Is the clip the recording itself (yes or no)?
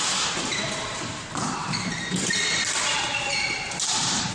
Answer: no